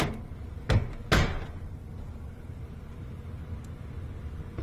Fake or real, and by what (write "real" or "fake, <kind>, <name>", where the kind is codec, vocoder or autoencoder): real